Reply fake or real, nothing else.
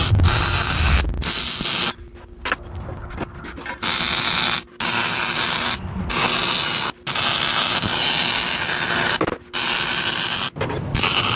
real